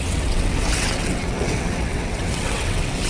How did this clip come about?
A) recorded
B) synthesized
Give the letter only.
B